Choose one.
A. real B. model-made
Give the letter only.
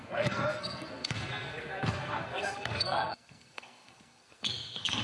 B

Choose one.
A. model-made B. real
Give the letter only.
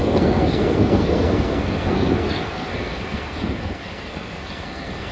A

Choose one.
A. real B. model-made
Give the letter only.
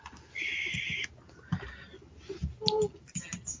A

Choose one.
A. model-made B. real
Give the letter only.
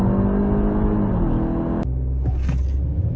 B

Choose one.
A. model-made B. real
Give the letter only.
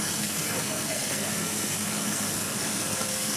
A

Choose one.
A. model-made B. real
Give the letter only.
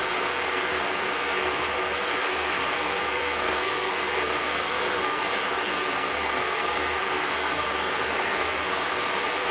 A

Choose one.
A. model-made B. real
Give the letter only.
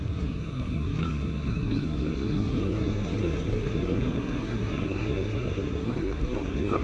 A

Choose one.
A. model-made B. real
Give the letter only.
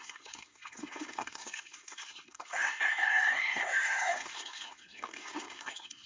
A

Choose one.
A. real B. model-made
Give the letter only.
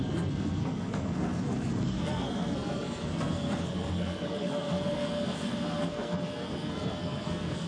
B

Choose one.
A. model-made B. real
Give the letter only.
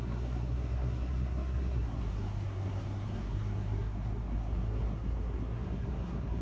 A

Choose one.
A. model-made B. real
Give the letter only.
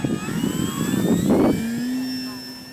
B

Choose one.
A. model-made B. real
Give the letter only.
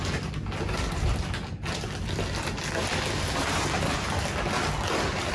B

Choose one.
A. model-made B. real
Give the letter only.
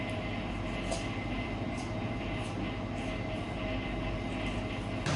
B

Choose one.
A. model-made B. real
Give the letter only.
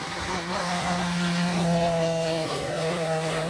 A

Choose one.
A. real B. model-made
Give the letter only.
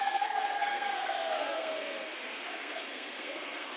B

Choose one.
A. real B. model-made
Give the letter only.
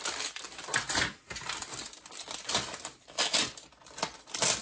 A